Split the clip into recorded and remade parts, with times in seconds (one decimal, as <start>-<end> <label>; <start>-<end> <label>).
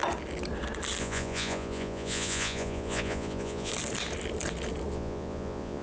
0.0-1.0 recorded; 1.0-3.7 remade; 3.7-4.9 recorded; 4.9-5.8 remade